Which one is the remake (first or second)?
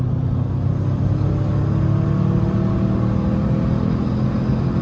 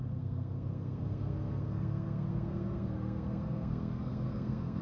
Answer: second